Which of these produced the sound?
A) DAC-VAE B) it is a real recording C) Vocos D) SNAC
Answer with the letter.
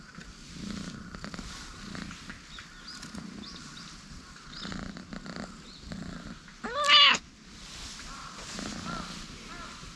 B